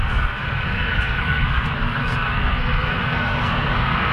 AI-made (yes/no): yes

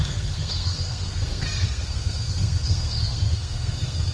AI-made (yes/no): yes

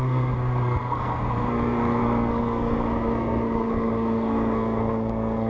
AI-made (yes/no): yes